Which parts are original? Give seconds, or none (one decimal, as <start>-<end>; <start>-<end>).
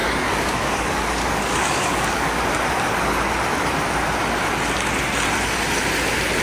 2.4-6.4